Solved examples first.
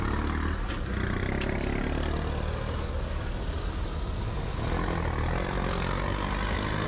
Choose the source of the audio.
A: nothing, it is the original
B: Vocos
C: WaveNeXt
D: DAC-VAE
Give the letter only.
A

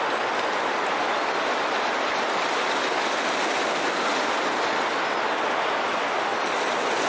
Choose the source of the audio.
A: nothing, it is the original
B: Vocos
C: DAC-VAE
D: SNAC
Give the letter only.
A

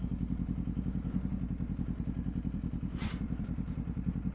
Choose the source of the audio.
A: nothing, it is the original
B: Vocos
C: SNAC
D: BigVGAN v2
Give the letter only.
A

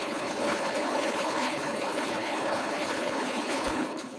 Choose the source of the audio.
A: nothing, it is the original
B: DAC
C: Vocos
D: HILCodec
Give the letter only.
D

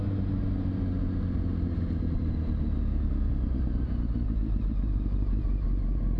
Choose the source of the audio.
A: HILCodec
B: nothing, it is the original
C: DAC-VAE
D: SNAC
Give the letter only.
B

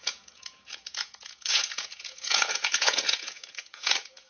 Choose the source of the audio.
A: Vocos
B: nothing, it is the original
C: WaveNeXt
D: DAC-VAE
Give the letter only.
A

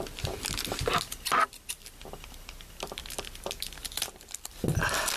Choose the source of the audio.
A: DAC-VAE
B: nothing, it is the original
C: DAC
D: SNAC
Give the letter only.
B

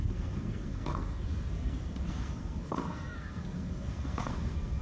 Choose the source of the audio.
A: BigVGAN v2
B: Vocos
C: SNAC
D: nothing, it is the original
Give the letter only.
C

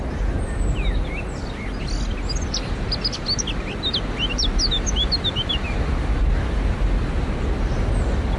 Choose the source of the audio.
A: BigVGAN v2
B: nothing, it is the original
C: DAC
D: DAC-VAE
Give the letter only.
B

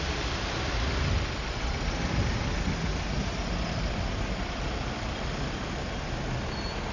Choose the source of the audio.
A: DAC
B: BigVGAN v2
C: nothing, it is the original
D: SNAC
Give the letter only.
C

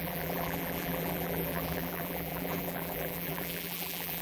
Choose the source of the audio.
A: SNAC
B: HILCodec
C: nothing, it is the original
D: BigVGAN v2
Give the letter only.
D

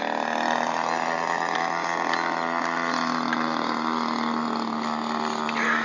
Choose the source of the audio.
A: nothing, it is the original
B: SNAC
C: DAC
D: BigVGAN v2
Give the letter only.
A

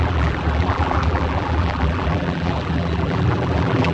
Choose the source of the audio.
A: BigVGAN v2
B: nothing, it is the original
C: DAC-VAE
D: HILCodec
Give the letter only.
A